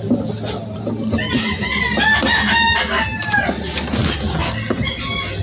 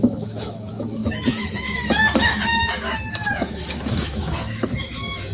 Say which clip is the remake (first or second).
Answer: second